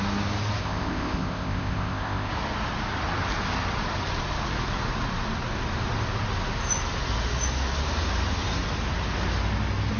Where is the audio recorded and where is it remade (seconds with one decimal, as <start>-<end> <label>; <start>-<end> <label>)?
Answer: 0.0-0.6 recorded; 0.6-2.3 remade; 2.3-10.0 recorded

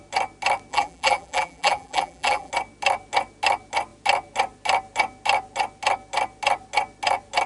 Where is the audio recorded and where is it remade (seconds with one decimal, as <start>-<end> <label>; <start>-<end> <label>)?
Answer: 0.0-0.7 recorded; 0.7-2.5 remade; 2.5-7.5 recorded

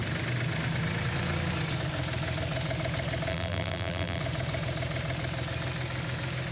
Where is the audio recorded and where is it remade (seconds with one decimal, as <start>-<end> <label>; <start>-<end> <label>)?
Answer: 0.0-3.3 recorded; 3.3-4.2 remade; 4.2-6.5 recorded

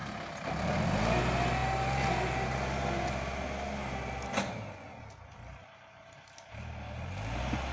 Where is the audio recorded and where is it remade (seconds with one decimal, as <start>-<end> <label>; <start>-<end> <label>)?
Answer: 0.0-7.7 recorded

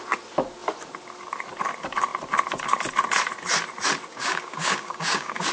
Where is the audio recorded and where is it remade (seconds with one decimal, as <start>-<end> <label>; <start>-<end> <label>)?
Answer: 0.0-4.1 recorded; 4.1-5.5 remade